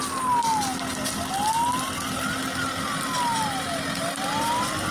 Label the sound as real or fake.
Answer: real